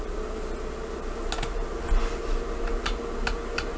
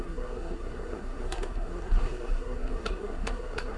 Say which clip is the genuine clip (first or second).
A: first